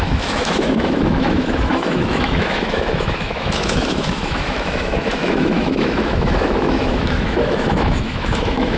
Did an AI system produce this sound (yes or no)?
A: yes